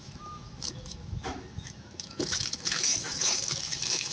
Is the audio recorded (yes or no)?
no